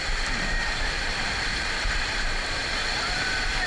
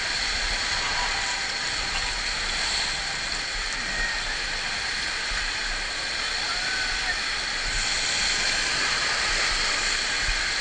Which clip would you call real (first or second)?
second